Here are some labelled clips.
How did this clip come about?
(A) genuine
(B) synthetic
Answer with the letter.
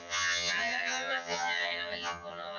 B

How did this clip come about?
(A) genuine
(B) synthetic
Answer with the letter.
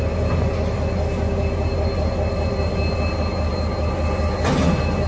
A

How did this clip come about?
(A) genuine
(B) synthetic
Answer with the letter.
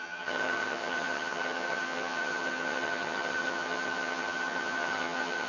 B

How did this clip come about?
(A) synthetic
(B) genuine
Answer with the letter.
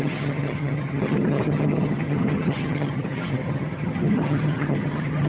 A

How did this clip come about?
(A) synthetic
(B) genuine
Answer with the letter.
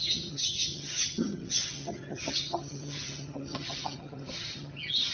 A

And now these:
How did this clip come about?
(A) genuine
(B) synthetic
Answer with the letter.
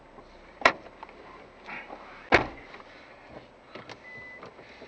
A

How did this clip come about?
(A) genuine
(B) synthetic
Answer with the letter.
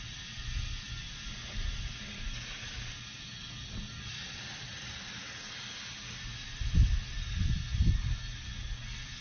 A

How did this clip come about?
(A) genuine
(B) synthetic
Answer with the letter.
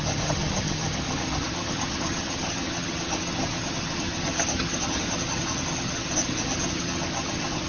B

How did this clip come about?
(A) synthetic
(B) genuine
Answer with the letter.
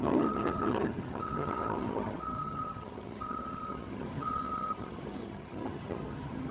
A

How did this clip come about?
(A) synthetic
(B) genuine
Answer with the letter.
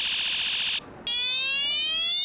B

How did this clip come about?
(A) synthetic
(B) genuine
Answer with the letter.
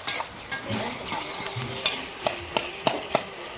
B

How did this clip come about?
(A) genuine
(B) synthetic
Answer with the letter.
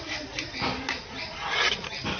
A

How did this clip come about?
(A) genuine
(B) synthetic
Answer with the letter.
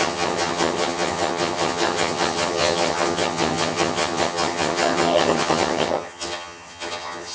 B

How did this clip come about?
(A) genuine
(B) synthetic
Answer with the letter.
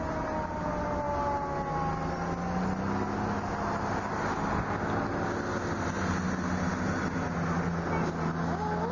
A